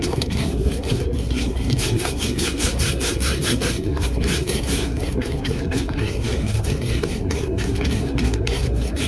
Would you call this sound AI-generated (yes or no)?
yes